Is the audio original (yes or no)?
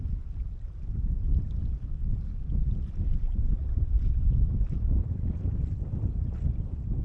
yes